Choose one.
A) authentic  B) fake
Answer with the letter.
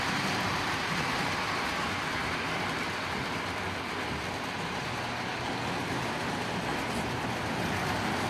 A